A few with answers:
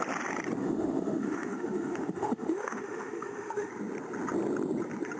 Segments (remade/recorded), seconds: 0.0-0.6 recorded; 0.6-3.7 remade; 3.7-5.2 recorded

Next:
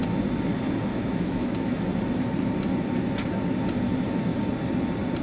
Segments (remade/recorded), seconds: 0.0-0.9 recorded; 0.9-1.9 remade; 1.9-5.2 recorded

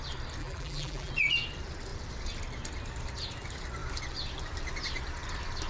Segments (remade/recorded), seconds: 0.0-0.4 recorded; 0.4-1.1 remade; 1.1-5.7 recorded

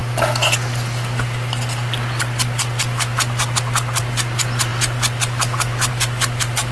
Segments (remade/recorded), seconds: 0.0-6.7 recorded

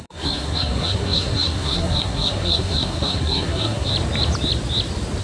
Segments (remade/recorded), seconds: 0.0-3.9 remade; 3.9-5.2 recorded